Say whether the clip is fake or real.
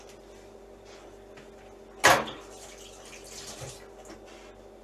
real